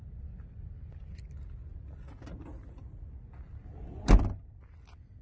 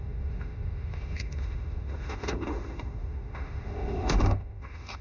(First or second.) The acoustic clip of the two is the first